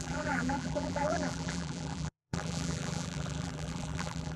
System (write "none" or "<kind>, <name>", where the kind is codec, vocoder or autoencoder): vocoder, BigVGAN v2